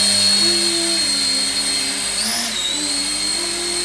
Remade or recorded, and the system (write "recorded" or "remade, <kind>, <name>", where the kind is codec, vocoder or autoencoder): recorded